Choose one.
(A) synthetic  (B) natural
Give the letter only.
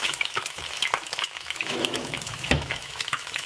A